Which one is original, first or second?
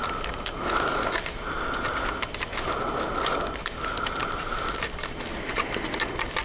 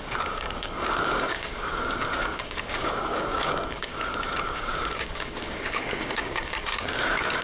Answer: first